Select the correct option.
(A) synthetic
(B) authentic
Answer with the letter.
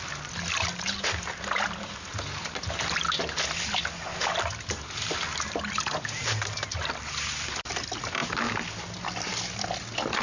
B